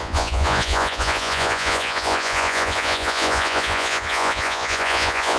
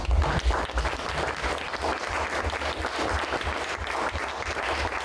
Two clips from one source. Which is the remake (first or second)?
first